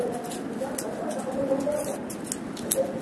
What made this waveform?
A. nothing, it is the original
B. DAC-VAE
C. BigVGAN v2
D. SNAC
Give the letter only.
A